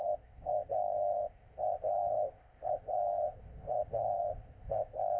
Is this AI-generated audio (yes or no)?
yes